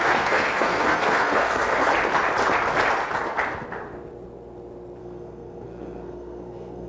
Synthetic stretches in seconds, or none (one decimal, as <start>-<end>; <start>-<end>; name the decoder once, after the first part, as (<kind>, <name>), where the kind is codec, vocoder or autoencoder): 0.0-1.9 (codec, SNAC); 5.0-6.9